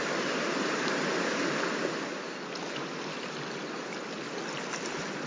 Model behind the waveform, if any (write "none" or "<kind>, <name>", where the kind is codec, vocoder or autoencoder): none